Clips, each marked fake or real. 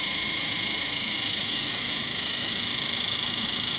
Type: fake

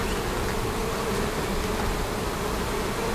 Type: real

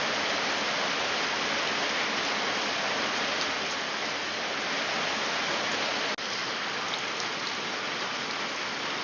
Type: real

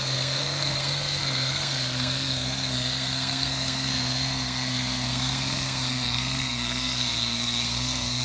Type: fake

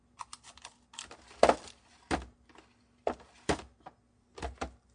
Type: real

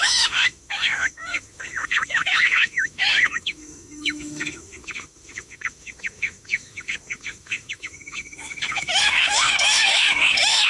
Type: fake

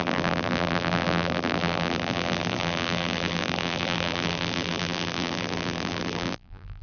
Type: fake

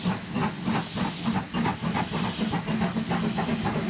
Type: real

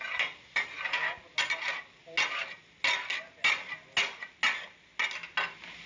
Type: real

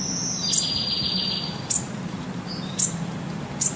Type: real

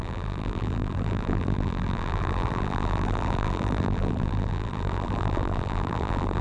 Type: fake